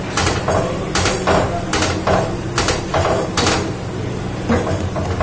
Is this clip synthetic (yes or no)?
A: no